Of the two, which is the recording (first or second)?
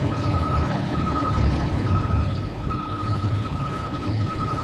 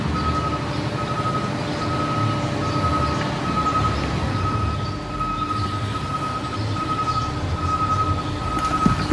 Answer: second